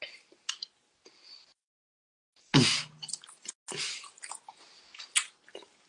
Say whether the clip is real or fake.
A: real